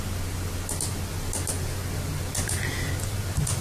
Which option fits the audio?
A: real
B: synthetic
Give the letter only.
A